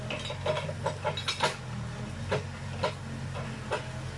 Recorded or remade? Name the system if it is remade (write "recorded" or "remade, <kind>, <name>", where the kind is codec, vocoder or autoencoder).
recorded